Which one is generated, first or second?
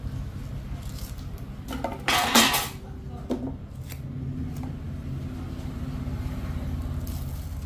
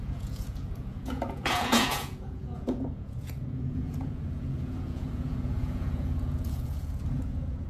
second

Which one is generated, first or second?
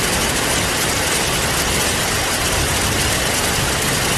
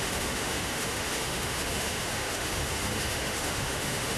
second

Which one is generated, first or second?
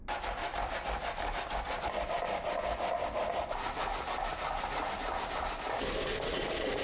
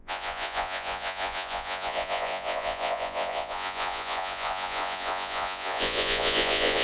second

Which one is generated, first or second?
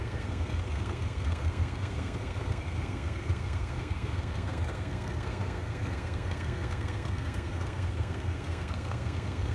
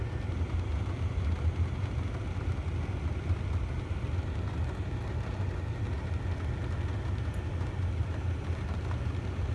first